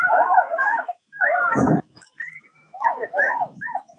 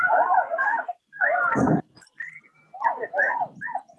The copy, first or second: first